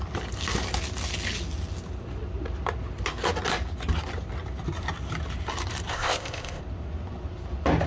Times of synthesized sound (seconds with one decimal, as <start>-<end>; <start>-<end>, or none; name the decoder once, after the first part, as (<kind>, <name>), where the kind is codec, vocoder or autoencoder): 5.9-6.6 (codec, ZipCodec)